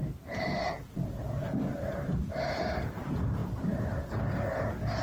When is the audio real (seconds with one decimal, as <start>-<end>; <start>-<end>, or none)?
0.7-1.7; 2.2-3.4; 4.0-5.0